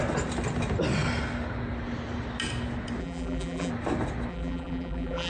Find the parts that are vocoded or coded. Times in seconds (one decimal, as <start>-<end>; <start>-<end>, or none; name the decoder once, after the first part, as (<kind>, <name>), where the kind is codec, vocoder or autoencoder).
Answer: 3.0-3.7 (vocoder, BigVGAN v2); 4.3-5.3